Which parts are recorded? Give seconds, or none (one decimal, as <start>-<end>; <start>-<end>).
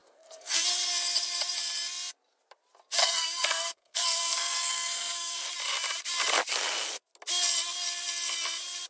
0.6-3.0; 5.5-8.9